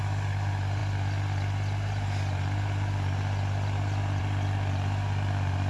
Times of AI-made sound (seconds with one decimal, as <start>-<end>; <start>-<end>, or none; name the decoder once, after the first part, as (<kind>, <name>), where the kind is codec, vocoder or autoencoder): none